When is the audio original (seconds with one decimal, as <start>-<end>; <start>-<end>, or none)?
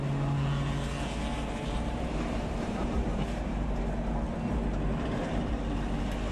0.0-1.3; 3.8-6.3